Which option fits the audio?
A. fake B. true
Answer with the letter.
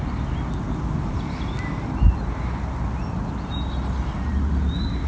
B